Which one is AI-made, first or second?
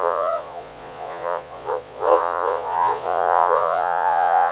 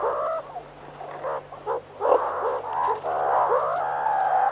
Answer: first